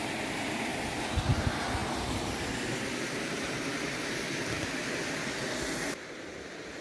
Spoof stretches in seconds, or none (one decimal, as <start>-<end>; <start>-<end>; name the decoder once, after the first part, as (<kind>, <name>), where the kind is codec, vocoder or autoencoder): none